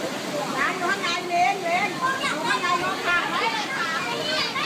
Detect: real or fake real